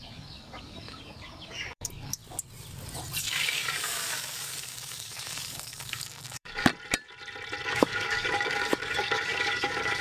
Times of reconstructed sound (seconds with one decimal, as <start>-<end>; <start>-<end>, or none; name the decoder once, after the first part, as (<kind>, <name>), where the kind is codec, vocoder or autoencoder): 0.0-2.2 (codec, DAC); 3.2-6.7; 7.7-10.0